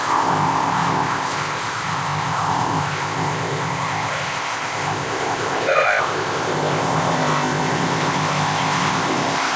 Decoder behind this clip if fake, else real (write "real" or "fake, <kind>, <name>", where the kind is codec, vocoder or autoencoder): fake, codec, ZipCodec